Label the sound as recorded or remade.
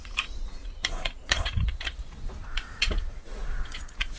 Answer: remade